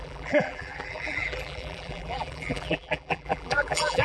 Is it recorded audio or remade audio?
remade